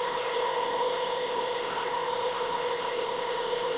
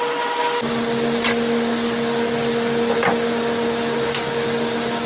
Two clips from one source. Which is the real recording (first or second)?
second